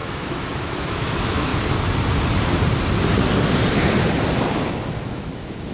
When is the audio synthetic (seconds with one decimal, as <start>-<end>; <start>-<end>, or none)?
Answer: 0.0-1.5; 4.9-5.7